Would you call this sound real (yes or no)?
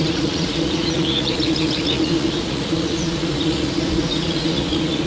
no